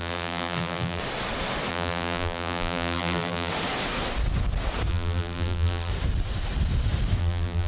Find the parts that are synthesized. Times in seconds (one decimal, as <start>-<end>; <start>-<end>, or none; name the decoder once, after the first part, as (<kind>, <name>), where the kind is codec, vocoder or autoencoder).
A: 0.0-1.0 (vocoder, BigVGAN v2); 1.7-3.5; 4.9-5.9; 7.2-7.7